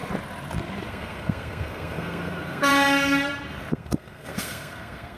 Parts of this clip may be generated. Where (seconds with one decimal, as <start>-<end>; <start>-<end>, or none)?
0.9-2.7; 3.7-5.2